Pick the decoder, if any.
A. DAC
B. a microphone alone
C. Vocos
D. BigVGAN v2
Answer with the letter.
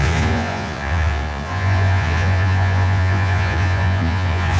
C